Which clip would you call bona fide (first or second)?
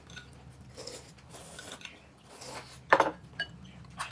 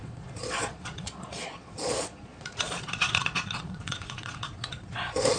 first